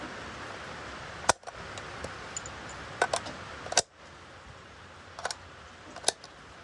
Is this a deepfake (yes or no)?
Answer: no